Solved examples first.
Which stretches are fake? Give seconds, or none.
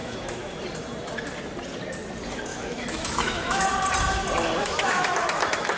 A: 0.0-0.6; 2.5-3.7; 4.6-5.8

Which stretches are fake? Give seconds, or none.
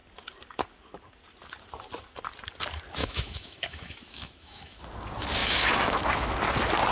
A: 3.0-4.8; 5.4-6.0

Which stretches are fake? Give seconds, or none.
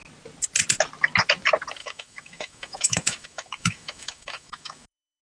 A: 1.8-5.2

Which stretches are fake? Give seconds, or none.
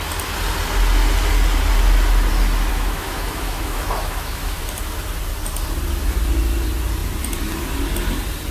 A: 2.7-4.6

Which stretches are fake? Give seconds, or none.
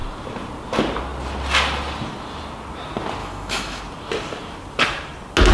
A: 3.2-3.8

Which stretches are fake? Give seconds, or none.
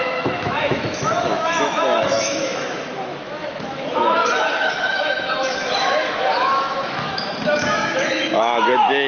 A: 0.0-9.1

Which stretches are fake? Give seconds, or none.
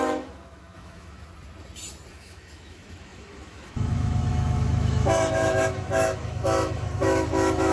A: 0.0-1.2; 2.1-7.7